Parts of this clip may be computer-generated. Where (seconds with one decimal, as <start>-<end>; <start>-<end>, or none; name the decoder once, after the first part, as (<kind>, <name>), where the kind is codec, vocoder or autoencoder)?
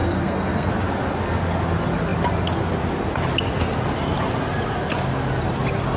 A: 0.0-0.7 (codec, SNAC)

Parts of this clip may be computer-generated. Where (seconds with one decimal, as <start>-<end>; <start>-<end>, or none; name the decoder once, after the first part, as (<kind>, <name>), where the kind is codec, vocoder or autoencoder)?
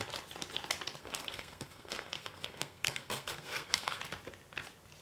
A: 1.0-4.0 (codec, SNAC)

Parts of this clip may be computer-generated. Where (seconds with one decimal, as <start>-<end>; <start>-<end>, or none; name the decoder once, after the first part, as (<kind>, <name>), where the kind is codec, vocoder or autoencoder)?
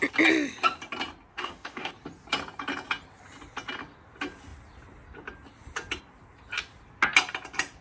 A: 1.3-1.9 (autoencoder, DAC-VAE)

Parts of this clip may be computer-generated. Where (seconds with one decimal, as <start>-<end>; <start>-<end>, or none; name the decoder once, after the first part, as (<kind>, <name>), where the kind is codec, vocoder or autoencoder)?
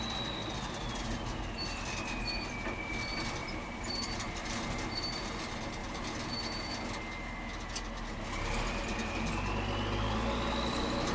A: 3.4-5.2 (vocoder, BigVGAN v2)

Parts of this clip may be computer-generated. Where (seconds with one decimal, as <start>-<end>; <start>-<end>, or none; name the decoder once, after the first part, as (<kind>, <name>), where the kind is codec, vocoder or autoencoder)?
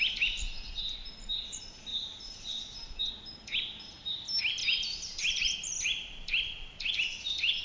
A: 1.9-3.1 (vocoder, BigVGAN v2); 4.6-6.9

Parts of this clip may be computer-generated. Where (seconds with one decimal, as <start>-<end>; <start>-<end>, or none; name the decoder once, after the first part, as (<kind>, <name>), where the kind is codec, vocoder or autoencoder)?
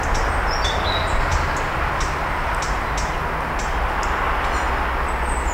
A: none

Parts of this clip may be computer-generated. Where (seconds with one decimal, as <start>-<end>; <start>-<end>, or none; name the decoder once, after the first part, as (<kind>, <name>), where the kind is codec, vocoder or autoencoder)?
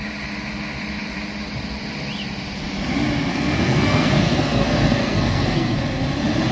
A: 3.3-5.8 (codec, SNAC)